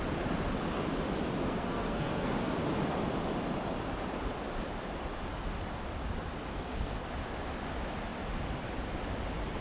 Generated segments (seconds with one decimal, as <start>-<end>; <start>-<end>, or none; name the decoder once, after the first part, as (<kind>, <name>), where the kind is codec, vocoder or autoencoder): 1.4-2.3 (codec, SNAC); 6.5-7.1